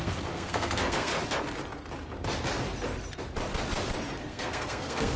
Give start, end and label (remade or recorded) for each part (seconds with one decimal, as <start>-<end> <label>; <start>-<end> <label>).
0.0-1.1 remade; 1.1-4.2 recorded; 4.2-5.2 remade